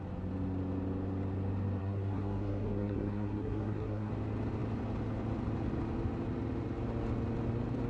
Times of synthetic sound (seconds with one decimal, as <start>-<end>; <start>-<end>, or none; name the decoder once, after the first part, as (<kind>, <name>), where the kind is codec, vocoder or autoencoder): 1.8-4.1 (codec, SNAC)